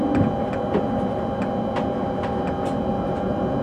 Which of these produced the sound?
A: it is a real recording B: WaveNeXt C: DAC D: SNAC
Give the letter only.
A